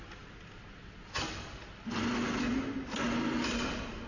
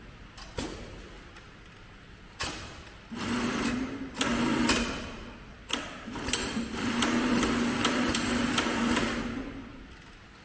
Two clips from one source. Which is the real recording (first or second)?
first